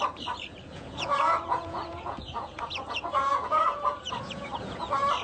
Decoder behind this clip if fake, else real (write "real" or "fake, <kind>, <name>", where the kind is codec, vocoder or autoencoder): fake, vocoder, Vocos